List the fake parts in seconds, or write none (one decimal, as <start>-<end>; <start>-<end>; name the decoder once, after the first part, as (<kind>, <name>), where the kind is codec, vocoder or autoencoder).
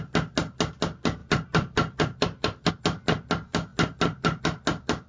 1.2-2.7 (vocoder, BigVGAN v2)